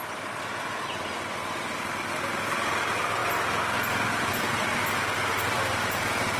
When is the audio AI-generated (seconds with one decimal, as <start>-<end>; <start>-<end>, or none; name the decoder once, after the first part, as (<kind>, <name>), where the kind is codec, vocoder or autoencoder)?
none